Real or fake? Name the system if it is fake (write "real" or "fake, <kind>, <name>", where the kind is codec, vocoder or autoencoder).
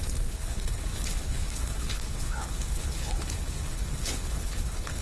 fake, codec, HILCodec